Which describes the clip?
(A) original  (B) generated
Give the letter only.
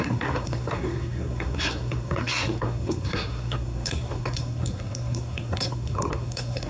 B